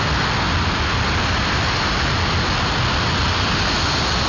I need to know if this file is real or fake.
real